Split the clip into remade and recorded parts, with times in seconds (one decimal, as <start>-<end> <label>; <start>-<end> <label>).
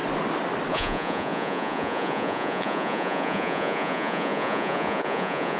0.0-0.7 recorded; 0.7-5.6 remade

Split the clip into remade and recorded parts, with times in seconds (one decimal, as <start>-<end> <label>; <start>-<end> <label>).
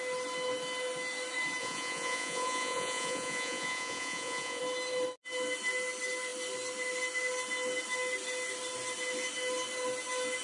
0.0-1.6 recorded; 1.6-4.6 remade; 4.6-10.4 recorded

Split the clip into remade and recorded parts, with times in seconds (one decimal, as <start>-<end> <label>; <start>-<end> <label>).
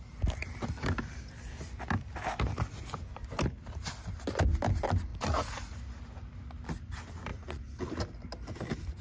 0.0-5.1 recorded; 5.1-6.0 remade; 6.0-7.3 recorded; 7.3-8.0 remade; 8.0-9.0 recorded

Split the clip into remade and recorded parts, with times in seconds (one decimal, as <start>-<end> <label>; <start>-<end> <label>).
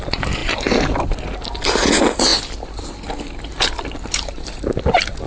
0.0-5.3 recorded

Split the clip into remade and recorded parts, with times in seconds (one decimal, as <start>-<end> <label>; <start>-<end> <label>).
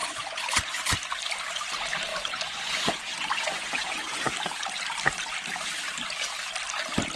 0.0-0.7 remade; 0.7-2.1 recorded; 2.1-4.3 remade; 4.3-7.2 recorded